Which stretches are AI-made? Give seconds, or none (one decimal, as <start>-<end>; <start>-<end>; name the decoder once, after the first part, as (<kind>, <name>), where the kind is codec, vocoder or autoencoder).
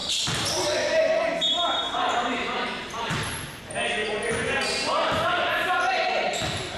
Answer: 0.0-3.6 (vocoder, BigVGAN v2)